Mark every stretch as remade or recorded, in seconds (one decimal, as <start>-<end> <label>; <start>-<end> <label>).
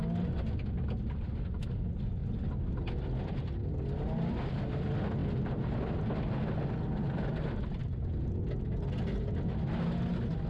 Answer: 0.0-10.5 recorded